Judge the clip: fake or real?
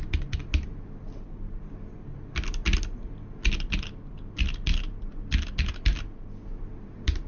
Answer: real